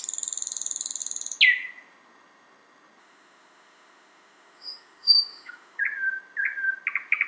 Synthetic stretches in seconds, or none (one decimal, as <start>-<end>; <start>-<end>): 3.0-5.8

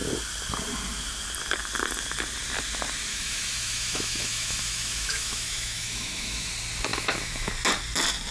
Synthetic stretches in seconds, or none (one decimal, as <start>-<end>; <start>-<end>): 3.1-6.5; 6.9-7.5

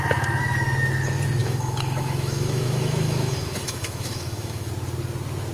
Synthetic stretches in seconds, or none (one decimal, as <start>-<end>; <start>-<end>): 1.4-4.7

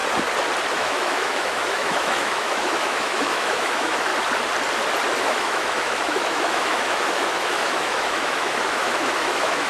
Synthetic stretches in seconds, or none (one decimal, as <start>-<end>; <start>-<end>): 0.7-4.1; 5.2-9.7